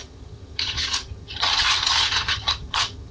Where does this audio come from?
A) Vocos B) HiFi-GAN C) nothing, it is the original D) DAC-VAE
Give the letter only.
B